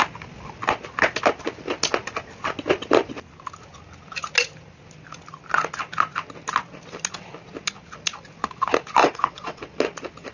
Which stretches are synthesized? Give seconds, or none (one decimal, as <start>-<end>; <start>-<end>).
9.0-9.6